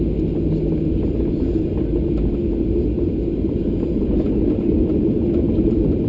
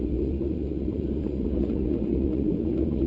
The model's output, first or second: second